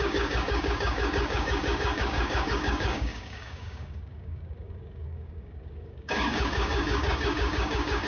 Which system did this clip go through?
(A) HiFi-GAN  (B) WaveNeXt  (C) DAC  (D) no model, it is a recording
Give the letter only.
C